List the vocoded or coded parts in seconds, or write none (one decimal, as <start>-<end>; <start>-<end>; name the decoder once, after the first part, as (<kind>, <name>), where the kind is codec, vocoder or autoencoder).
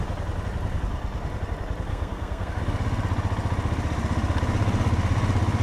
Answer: 1.9-2.6 (codec, SNAC)